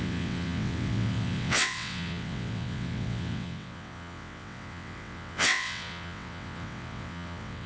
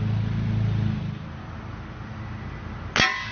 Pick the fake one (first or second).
first